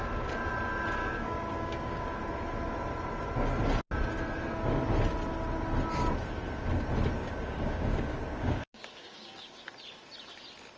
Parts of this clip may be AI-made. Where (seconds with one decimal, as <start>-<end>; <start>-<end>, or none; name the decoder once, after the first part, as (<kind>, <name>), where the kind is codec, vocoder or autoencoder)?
1.0-2.2 (codec, DAC); 7.2-9.6